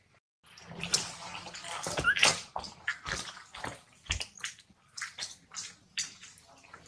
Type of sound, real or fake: real